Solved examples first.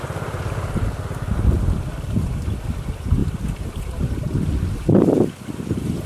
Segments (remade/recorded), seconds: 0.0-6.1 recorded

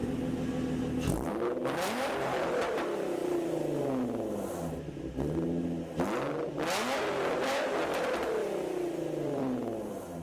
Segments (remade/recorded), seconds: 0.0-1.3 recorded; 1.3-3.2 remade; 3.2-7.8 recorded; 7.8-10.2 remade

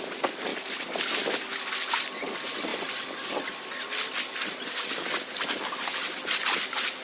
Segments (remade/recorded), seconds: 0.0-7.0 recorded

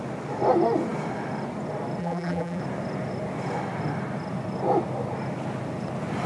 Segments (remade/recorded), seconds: 0.0-2.0 recorded; 2.0-2.6 remade; 2.6-6.3 recorded

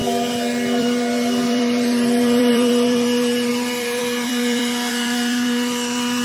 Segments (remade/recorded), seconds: 0.0-0.8 recorded; 0.8-6.2 remade

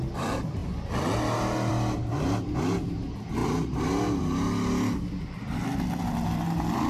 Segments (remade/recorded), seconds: 0.0-6.9 recorded

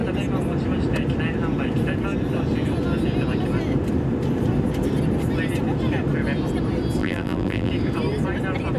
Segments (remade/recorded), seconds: 0.0-7.0 recorded; 7.0-7.7 remade; 7.7-8.8 recorded

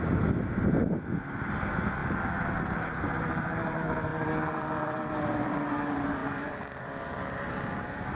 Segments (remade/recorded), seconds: 0.0-2.0 remade; 2.0-2.6 recorded; 2.6-8.2 remade